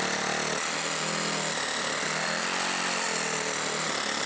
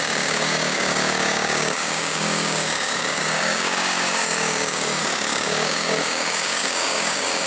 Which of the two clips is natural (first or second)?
first